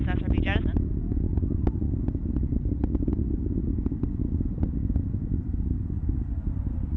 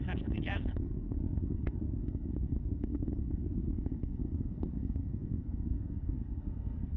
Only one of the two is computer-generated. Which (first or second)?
second